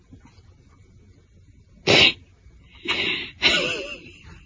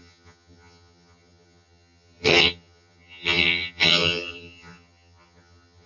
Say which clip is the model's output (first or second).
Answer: second